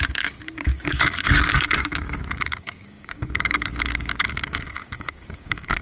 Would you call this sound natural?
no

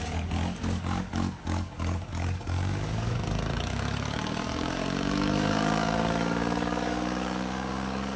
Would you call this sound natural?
no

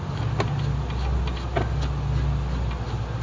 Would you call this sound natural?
yes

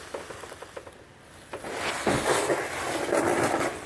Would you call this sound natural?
yes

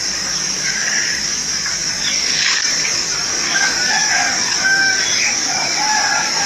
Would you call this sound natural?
no